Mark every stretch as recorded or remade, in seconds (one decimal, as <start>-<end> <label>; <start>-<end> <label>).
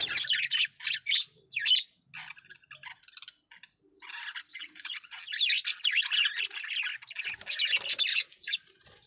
0.0-4.5 recorded; 4.5-5.2 remade; 5.2-8.1 recorded; 8.1-8.7 remade; 8.7-9.1 recorded